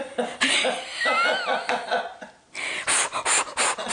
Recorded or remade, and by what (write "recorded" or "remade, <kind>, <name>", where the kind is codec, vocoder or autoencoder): recorded